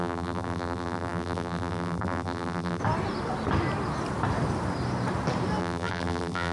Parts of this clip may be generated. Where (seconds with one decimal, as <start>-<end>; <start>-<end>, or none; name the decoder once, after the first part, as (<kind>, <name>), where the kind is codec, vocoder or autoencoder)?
0.0-2.8 (vocoder, BigVGAN v2); 5.6-6.5